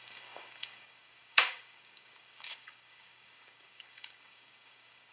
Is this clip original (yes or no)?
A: no